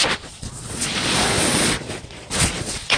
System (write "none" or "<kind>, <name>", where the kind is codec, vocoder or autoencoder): vocoder, Vocos